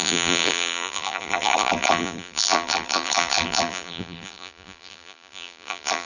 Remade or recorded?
remade